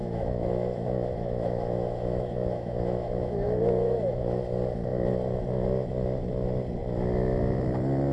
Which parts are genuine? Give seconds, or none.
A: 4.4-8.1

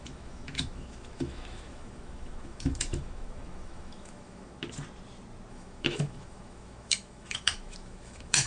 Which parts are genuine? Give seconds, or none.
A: 4.6-5.5

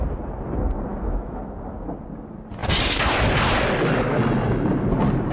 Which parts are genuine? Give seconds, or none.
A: 0.0-0.9; 1.4-5.3

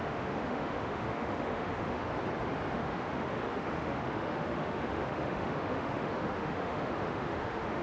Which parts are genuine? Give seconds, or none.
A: 2.1-2.7